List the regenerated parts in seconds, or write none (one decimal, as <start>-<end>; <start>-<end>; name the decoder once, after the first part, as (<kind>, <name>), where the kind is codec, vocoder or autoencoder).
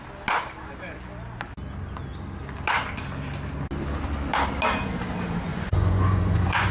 5.5-6.7 (vocoder, Vocos)